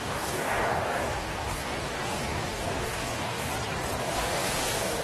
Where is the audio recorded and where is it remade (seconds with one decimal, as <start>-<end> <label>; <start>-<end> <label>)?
0.0-3.5 remade; 3.5-4.0 recorded; 4.0-5.0 remade